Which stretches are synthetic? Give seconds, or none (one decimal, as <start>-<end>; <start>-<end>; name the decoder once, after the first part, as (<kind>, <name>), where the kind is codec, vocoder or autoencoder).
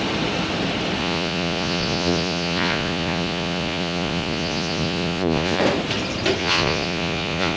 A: 1.0-5.6 (vocoder, Vocos); 6.4-7.6